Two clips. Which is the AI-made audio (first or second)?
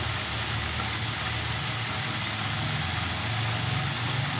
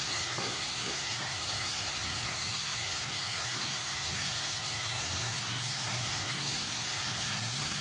second